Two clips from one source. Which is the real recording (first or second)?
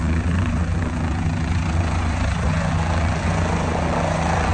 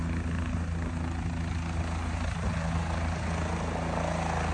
second